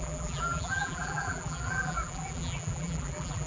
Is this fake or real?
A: fake